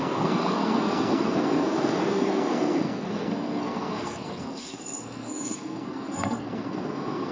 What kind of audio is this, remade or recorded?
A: remade